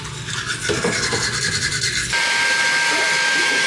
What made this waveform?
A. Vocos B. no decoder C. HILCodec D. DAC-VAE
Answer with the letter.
B